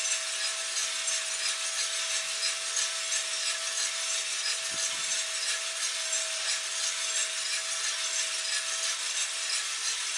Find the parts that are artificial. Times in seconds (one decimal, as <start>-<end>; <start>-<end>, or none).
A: none